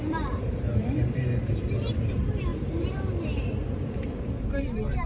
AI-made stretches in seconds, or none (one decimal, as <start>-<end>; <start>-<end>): 0.0-5.1